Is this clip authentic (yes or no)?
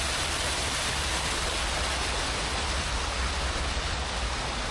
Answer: yes